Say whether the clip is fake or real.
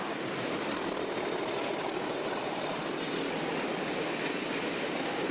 real